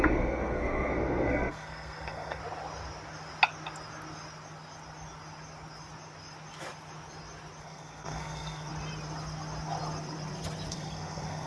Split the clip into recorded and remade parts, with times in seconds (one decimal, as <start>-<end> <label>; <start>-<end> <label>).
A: 0.0-2.4 remade; 2.4-7.6 recorded; 7.6-8.7 remade; 8.7-10.7 recorded; 10.7-11.5 remade